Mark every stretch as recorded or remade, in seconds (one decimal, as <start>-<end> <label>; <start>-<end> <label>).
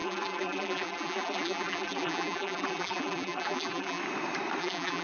0.0-4.0 remade; 4.0-4.6 recorded; 4.6-5.0 remade